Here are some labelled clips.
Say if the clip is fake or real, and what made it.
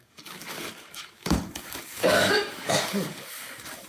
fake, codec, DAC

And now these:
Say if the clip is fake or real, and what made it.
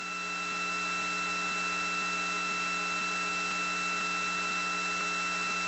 real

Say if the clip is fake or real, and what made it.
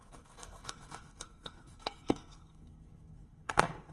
fake, codec, SNAC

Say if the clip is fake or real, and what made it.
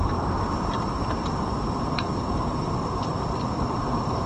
fake, vocoder, BigVGAN v2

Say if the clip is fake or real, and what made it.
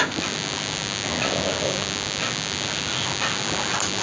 real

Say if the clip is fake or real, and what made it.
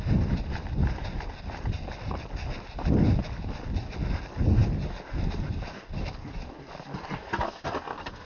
real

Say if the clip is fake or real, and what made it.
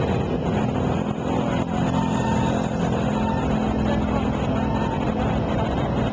real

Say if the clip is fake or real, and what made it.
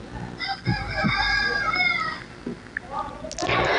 real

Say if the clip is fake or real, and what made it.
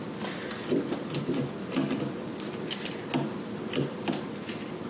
real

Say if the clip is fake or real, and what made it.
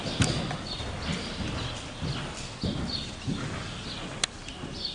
real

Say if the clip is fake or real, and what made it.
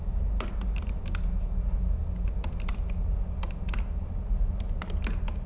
real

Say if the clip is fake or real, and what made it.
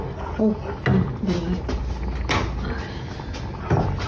real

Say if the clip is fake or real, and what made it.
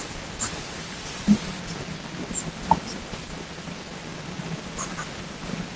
real